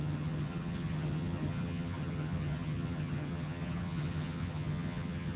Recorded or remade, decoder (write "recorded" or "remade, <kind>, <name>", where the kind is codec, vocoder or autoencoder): remade, vocoder, HiFi-GAN